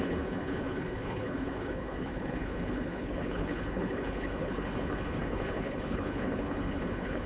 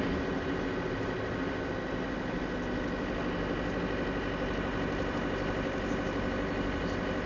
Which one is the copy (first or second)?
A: first